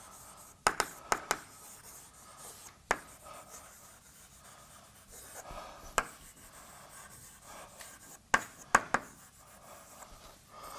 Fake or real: real